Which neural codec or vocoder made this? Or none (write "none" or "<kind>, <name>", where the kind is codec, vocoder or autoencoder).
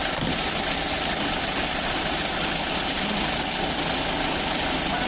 none